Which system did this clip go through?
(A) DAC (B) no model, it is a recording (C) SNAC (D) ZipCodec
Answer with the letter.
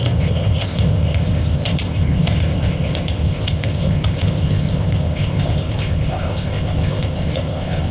D